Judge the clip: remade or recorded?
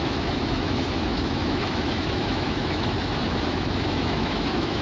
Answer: remade